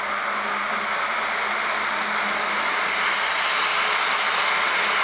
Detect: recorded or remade recorded